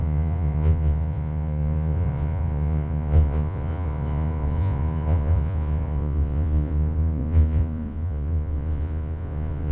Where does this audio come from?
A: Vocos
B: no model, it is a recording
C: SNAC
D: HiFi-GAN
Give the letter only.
A